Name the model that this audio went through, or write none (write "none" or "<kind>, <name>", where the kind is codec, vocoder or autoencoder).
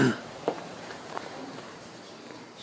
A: vocoder, BigVGAN v2